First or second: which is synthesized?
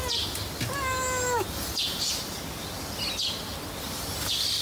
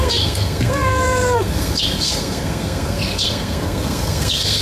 second